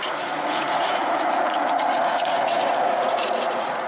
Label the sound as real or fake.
fake